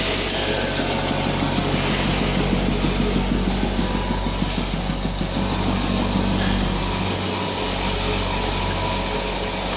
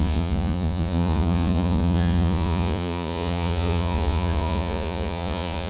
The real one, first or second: first